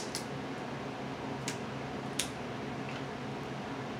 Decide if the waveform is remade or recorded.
recorded